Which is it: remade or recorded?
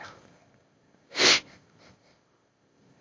remade